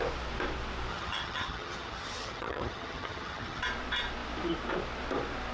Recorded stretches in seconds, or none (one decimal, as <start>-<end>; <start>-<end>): 0.0-0.9; 3.6-5.5